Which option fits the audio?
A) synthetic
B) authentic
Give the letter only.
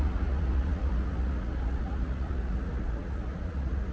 A